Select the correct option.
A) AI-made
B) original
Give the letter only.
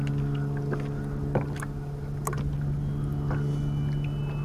B